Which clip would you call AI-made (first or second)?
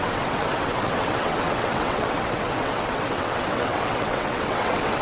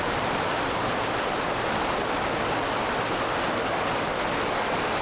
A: first